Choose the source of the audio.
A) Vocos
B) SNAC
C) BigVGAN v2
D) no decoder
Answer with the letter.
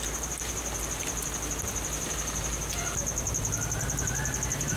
D